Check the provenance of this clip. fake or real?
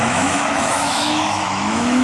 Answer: fake